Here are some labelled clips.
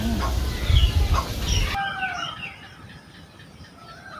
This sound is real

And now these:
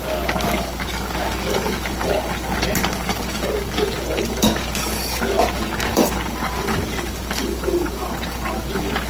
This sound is fake